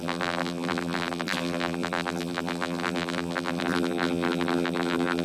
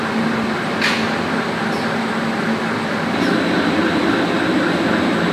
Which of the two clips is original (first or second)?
second